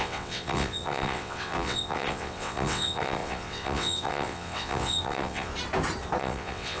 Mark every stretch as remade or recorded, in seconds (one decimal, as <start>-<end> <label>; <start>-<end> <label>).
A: 0.0-5.5 remade; 5.5-6.2 recorded; 6.2-6.8 remade